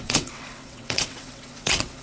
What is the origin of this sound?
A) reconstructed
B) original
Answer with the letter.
A